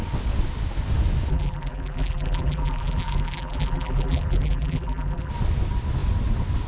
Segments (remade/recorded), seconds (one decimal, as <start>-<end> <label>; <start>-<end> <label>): 0.0-1.3 recorded; 1.3-5.3 remade; 5.3-6.7 recorded